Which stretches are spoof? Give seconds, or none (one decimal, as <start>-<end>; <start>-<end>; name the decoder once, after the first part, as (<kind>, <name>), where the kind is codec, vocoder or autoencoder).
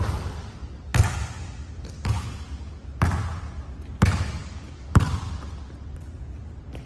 4.4-5.2 (codec, DAC)